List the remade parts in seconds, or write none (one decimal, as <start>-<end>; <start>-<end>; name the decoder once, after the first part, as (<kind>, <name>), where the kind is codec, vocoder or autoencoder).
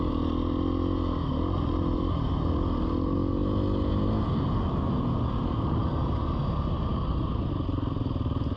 none